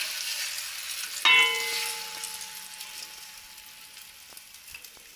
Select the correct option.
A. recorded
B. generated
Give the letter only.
A